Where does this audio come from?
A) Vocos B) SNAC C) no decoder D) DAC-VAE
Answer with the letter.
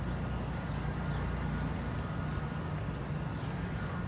C